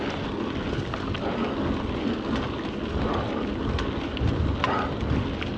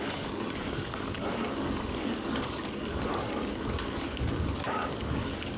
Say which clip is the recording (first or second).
first